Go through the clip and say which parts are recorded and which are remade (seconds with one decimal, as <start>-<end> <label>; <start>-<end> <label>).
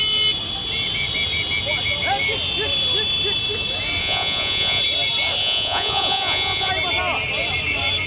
0.0-4.0 recorded; 4.0-4.8 remade; 4.8-5.4 recorded; 5.4-6.7 remade; 6.7-8.1 recorded